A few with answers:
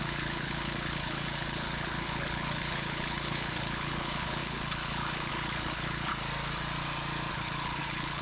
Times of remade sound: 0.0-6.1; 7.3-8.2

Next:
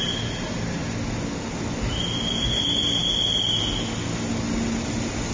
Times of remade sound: none

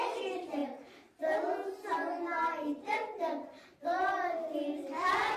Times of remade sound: none

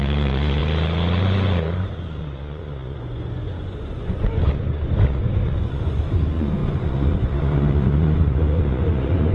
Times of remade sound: 0.0-0.6; 1.2-9.3